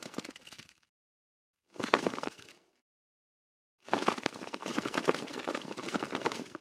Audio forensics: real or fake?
fake